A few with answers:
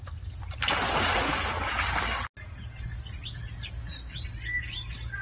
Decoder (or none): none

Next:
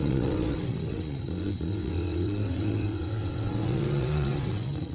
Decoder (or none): vocoder, WaveNeXt